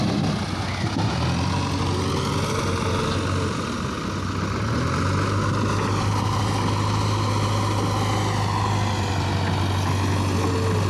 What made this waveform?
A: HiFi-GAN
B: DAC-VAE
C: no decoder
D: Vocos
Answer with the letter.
C